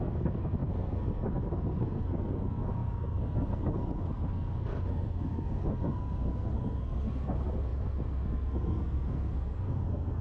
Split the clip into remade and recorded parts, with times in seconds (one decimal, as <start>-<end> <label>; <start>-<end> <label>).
0.0-10.2 remade